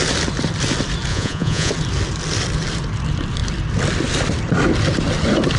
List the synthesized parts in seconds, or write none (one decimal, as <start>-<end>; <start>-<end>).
1.1-1.7